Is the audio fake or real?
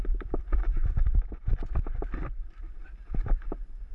fake